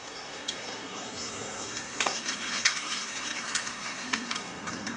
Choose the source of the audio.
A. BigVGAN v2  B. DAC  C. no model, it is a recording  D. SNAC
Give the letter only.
D